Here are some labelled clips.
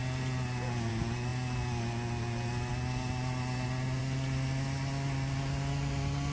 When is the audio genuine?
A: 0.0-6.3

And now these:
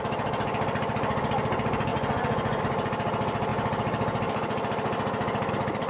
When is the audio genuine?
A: 0.0-1.9; 2.6-5.9